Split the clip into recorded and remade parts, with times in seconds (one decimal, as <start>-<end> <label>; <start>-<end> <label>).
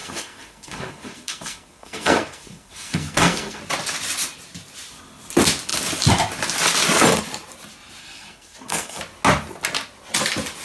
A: 0.0-3.6 remade; 3.6-8.0 recorded; 8.0-9.0 remade; 9.0-10.6 recorded